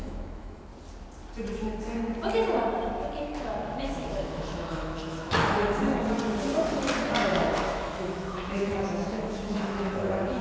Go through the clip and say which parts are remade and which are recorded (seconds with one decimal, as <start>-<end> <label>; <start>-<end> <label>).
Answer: 0.0-0.7 remade; 0.7-3.2 recorded; 3.2-5.8 remade; 5.8-7.3 recorded; 7.3-10.4 remade